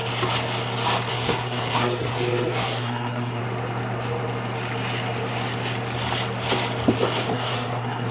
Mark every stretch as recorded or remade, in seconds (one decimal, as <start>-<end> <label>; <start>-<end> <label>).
0.0-1.1 recorded; 1.1-3.4 remade; 3.4-7.3 recorded; 7.3-8.1 remade